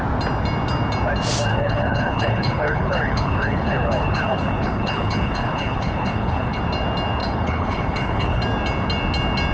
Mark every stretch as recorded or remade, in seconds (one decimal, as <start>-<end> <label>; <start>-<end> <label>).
0.0-1.5 recorded; 1.5-6.6 remade; 6.6-7.2 recorded; 7.2-8.4 remade; 8.4-9.5 recorded